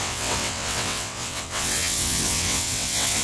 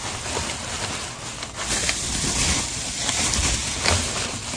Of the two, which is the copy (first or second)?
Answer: first